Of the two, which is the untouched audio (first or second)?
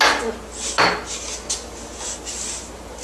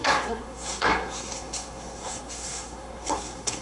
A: first